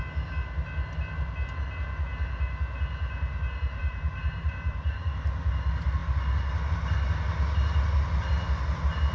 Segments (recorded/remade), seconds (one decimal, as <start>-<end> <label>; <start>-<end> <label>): 0.0-3.8 recorded; 3.8-5.1 remade; 5.1-9.1 recorded